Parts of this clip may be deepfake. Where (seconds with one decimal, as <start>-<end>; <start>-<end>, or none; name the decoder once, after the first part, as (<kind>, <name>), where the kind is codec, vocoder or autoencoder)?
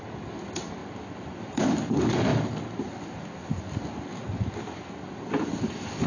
none